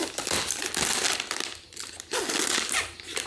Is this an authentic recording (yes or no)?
yes